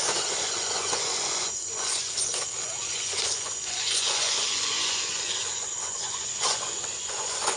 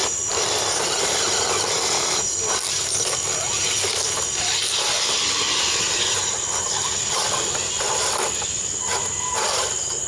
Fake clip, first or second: first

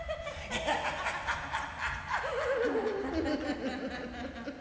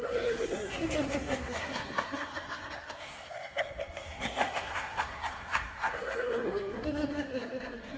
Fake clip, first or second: second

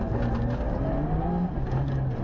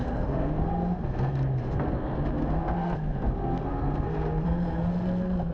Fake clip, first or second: second